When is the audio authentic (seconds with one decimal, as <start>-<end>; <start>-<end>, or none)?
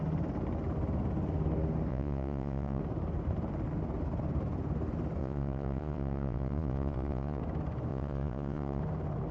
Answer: 0.0-1.9; 2.8-5.2; 7.4-7.9; 8.8-9.3